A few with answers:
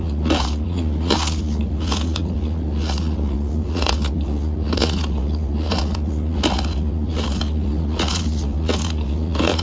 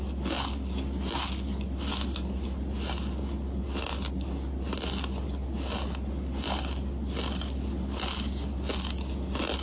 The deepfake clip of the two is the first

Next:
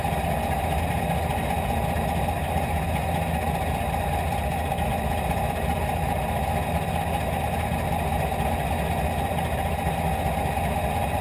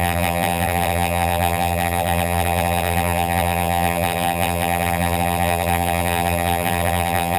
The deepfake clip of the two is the second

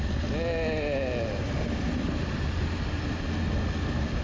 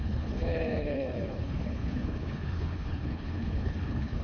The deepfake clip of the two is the second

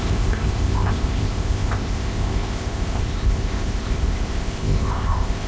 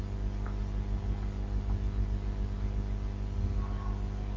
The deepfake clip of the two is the first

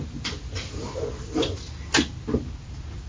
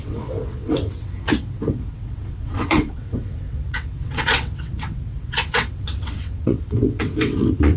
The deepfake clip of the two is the second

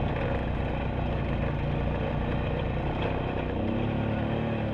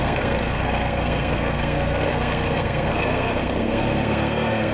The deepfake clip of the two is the second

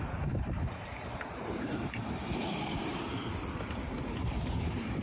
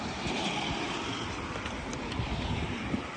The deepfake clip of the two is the first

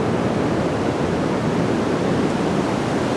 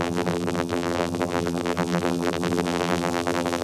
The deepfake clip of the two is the second